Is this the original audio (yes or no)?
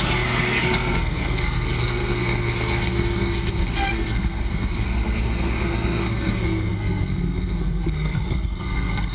no